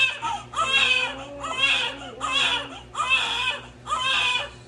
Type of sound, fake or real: real